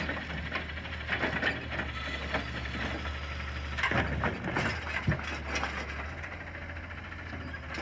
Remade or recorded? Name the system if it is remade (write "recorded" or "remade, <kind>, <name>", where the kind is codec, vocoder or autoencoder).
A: recorded